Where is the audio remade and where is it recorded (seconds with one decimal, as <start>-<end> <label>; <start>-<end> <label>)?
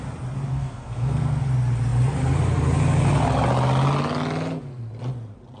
0.0-0.5 recorded; 0.5-1.4 remade; 1.4-5.6 recorded